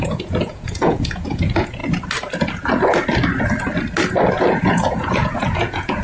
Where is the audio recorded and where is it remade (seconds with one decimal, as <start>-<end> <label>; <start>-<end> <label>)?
0.0-1.8 remade; 1.8-4.3 recorded; 4.3-6.0 remade